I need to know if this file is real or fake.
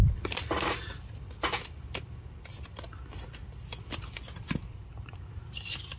fake